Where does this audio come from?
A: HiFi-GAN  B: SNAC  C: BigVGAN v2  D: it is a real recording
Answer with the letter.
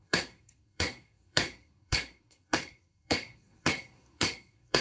B